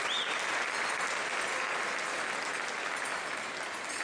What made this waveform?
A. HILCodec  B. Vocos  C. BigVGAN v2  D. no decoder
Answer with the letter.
D